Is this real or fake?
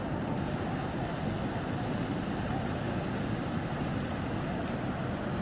real